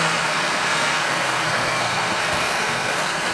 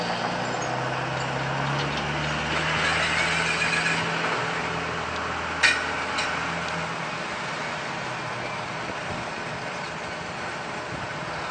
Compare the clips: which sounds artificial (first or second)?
first